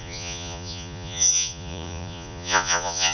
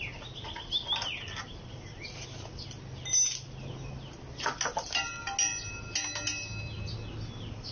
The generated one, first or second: first